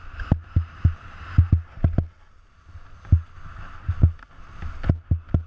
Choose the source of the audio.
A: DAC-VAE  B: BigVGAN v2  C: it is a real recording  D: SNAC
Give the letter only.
C